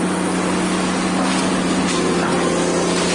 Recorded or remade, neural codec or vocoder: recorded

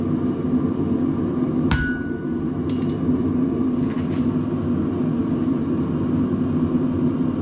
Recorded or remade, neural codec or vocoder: recorded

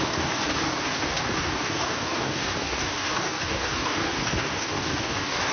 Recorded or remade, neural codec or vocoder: remade, codec, DAC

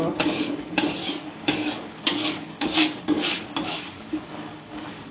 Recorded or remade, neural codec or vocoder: remade, codec, DAC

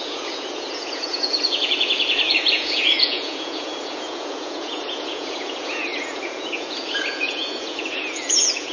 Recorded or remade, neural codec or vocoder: remade, vocoder, Vocos